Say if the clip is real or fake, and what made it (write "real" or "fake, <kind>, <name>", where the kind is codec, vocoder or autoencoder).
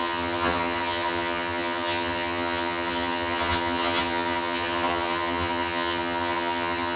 fake, vocoder, HiFi-GAN